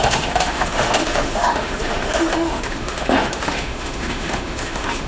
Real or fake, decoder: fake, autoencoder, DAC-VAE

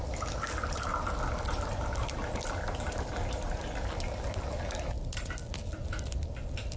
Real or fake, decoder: real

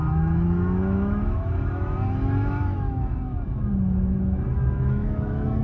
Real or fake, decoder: fake, autoencoder, DAC-VAE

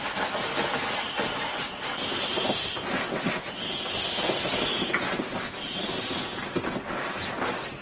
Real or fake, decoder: real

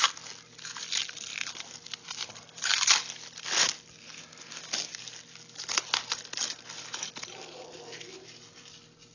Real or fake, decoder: real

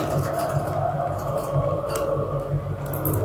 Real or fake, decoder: real